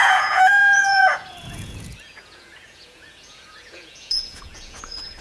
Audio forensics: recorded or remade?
remade